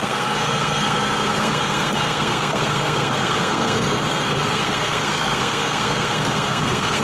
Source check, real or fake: fake